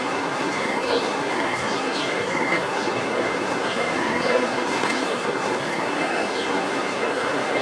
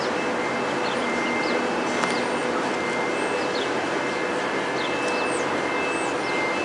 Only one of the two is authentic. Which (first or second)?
second